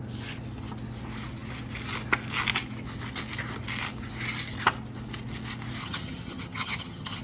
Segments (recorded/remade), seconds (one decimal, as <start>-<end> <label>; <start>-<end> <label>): 0.0-5.8 recorded; 5.8-7.2 remade